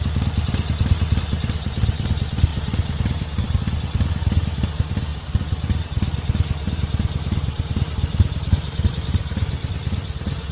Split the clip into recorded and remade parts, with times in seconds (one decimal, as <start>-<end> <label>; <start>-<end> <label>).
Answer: 0.0-2.5 recorded; 2.5-3.6 remade; 3.6-10.5 recorded